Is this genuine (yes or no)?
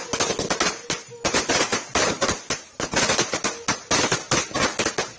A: yes